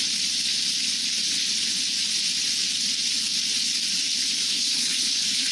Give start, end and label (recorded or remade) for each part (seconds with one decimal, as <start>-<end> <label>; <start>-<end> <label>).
0.0-4.5 recorded; 4.5-5.5 remade